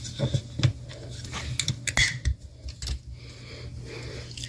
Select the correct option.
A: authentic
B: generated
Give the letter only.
A